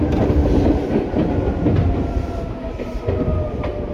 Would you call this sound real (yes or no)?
yes